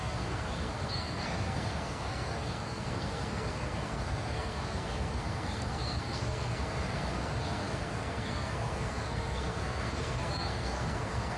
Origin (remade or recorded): remade